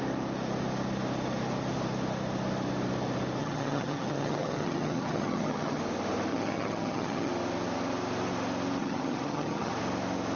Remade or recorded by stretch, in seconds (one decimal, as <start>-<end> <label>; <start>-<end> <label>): 0.0-3.4 recorded; 3.4-5.8 remade; 5.8-6.3 recorded; 6.3-7.3 remade; 7.3-8.8 recorded; 8.8-9.7 remade; 9.7-10.4 recorded